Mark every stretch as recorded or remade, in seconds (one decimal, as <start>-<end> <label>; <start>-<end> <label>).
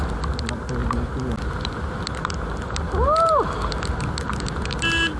0.0-5.2 recorded